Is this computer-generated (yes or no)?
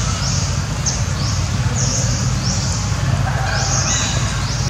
no